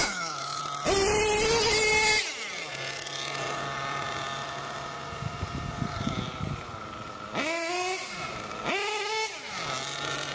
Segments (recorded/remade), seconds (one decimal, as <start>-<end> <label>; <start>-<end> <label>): 0.0-0.6 remade; 0.6-10.3 recorded